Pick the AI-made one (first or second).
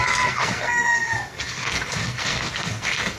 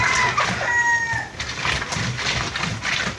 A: first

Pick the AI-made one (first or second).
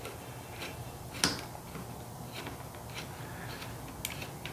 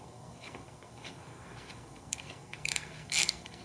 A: second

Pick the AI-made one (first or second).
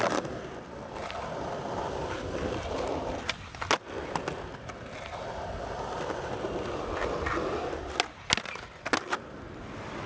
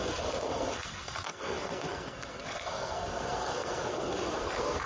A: second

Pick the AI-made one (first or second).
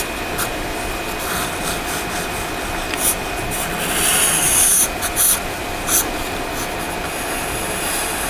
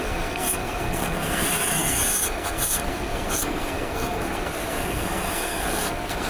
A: second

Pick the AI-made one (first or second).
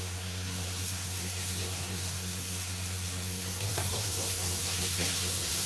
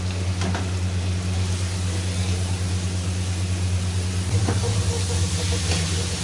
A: first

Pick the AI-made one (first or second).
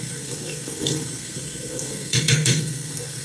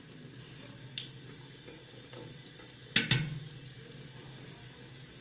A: first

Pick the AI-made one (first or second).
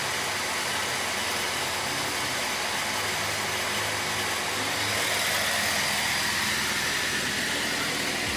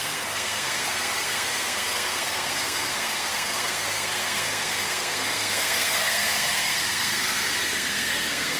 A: second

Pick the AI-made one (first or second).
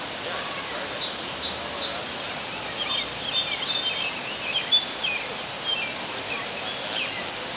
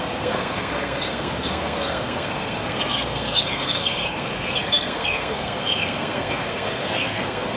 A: second